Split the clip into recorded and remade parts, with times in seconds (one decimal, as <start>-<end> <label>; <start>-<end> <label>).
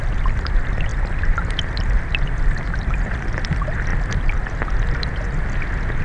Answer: 0.0-6.0 remade